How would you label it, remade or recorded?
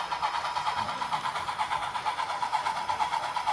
remade